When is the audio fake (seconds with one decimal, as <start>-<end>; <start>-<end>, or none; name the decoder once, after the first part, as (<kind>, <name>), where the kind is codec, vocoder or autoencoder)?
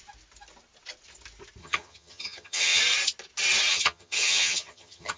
1.6-2.8 (vocoder, HiFi-GAN); 3.7-5.2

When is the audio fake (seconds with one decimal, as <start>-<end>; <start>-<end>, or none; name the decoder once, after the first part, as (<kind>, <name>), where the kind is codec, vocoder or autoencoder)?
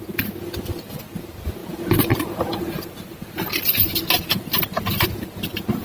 none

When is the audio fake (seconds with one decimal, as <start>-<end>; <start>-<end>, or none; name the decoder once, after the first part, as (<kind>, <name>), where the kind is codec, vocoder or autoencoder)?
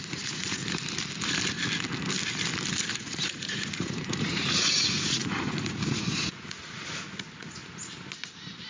0.0-0.6 (vocoder, Vocos); 2.9-7.6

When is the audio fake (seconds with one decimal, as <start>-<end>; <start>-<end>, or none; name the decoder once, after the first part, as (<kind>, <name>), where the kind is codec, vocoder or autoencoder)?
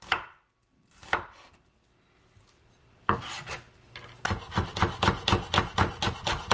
none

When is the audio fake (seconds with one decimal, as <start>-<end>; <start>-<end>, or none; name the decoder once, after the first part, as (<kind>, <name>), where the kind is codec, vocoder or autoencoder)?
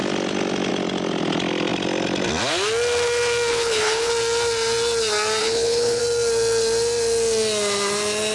3.5-4.1 (codec, HILCodec); 5.4-6.0